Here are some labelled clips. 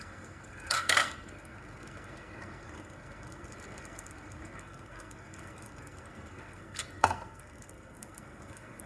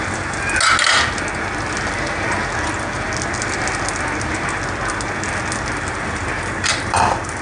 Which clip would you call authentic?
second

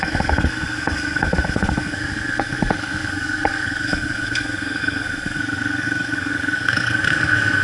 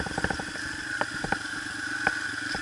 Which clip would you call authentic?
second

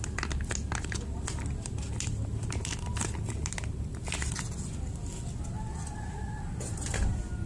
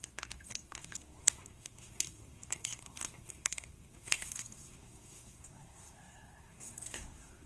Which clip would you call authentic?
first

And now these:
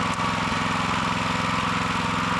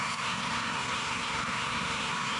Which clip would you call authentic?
first